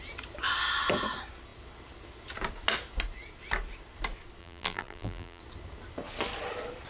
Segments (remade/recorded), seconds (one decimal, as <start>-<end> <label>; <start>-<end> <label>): 0.0-4.4 recorded; 4.4-5.4 remade; 5.4-6.9 recorded